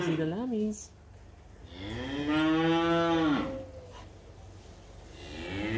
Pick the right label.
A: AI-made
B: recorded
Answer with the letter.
B